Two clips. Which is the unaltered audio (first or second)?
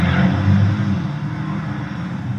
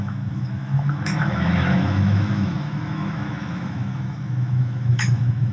first